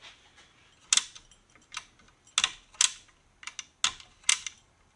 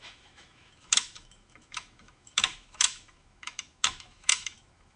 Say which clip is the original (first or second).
first